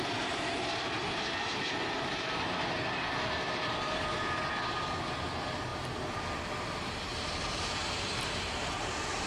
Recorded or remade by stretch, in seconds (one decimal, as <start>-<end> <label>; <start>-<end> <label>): 0.0-1.8 recorded; 1.8-4.4 remade; 4.4-9.3 recorded